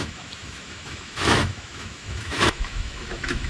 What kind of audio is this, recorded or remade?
remade